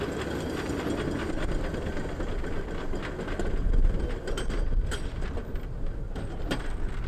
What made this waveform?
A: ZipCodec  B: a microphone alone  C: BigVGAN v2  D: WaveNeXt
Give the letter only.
B